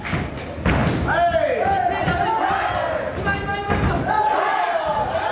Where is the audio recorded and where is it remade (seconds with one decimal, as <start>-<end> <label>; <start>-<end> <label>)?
0.0-5.3 recorded